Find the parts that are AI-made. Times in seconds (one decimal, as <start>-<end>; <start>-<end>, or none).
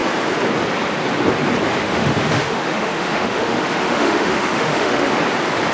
1.8-5.2